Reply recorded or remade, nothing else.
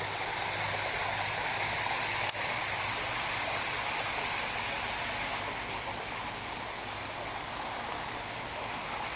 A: recorded